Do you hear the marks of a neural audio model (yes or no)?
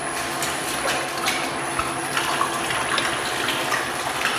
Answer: no